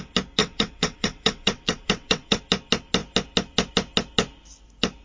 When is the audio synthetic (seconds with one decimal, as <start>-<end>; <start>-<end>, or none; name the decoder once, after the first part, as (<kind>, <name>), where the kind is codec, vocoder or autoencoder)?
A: 0.4-2.4 (vocoder, WaveNeXt)